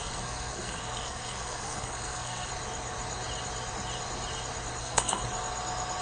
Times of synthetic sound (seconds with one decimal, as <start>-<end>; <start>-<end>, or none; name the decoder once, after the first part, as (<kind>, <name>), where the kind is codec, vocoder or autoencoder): 0.0-2.5 (codec, SNAC); 4.8-5.2